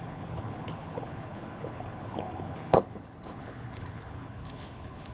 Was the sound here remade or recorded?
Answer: remade